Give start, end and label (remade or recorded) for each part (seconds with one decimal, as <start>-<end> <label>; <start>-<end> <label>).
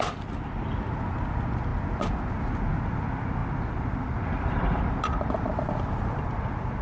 0.0-3.4 recorded; 3.4-6.8 remade